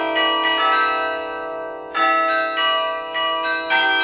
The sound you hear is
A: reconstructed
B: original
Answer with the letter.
B